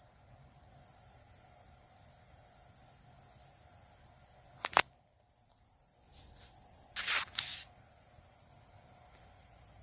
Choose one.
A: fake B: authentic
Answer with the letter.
B